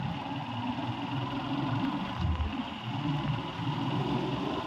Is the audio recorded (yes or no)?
yes